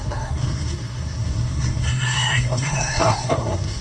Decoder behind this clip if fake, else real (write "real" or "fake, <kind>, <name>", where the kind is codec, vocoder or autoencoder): fake, codec, SNAC